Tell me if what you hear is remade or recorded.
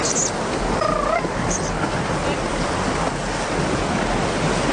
recorded